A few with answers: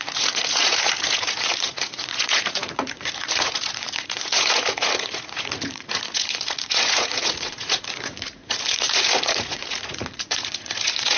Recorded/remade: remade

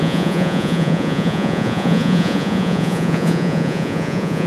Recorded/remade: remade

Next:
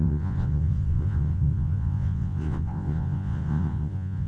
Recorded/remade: remade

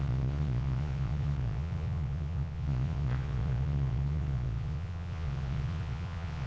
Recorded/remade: remade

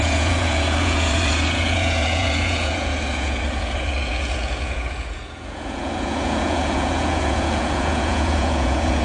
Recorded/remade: remade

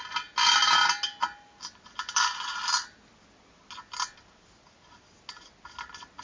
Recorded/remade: recorded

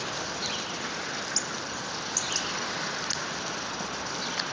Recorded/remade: recorded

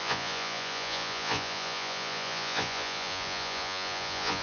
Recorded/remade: remade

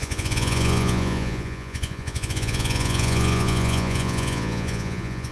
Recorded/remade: remade